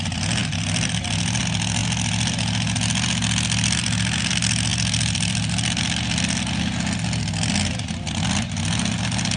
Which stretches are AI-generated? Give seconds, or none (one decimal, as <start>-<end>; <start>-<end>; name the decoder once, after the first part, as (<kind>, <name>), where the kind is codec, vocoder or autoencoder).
0.4-1.4 (vocoder, BigVGAN v2); 4.7-6.4